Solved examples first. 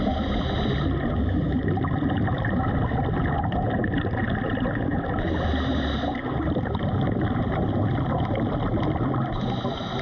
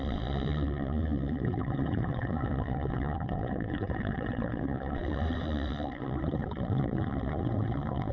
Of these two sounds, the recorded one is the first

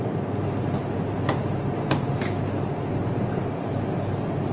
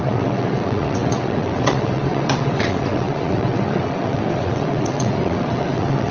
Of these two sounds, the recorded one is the first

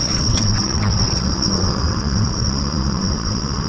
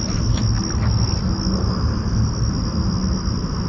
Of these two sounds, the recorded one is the second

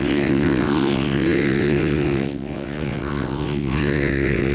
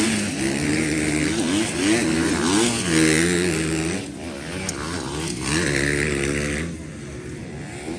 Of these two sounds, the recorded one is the second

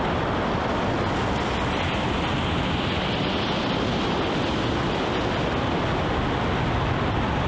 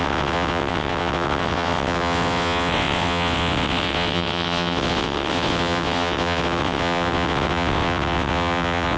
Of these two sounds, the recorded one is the first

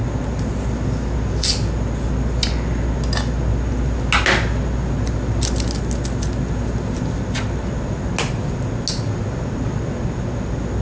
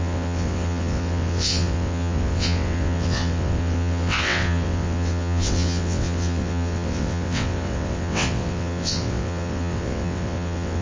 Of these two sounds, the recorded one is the first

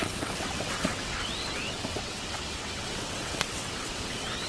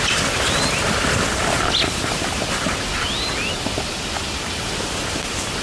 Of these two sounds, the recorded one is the second